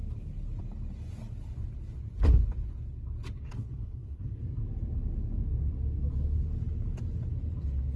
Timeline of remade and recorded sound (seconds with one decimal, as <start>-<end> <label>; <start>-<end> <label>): 0.0-3.5 recorded; 3.5-4.4 remade; 4.4-8.0 recorded